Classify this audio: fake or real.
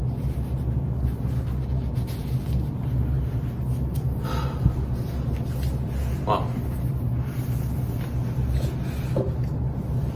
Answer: real